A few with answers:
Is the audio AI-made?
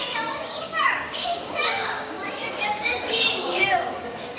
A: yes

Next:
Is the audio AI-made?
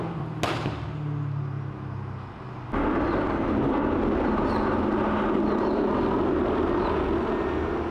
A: no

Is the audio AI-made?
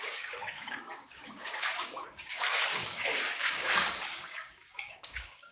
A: yes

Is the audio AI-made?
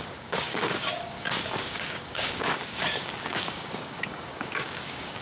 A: yes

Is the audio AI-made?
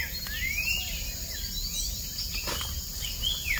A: no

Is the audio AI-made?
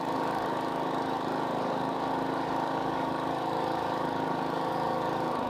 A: yes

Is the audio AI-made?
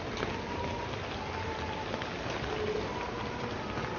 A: no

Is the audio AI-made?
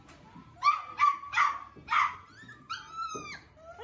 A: no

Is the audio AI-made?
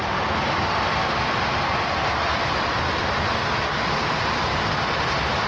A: no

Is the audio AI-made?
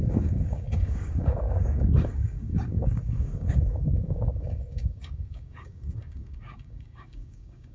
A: yes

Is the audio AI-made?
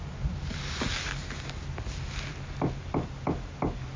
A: no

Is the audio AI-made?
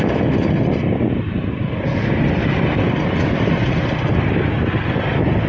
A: no